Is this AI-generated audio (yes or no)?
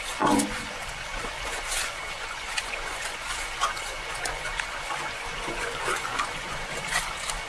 yes